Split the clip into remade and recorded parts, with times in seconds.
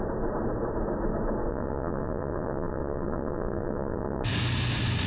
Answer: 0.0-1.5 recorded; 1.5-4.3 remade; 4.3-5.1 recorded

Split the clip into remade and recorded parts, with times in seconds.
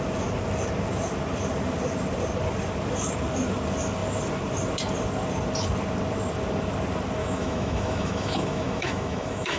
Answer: 0.0-7.2 recorded; 7.2-9.6 remade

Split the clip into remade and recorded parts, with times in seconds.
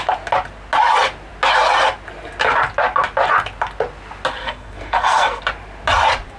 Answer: 0.0-4.4 recorded; 4.4-5.4 remade; 5.4-6.4 recorded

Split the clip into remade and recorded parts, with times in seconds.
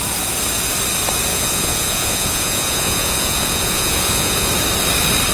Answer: 0.0-1.3 recorded; 1.3-4.5 remade; 4.5-5.3 recorded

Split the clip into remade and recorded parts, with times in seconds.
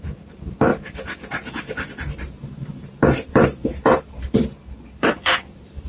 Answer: 0.0-5.9 remade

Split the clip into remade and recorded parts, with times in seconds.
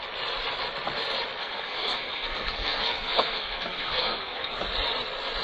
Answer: 0.0-1.4 recorded; 1.4-4.6 remade; 4.6-5.4 recorded